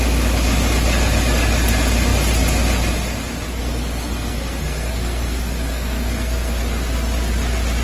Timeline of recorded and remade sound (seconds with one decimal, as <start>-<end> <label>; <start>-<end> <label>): 0.0-3.5 recorded; 3.5-6.6 remade; 6.6-7.8 recorded